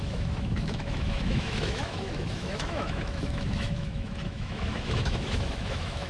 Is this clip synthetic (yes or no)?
yes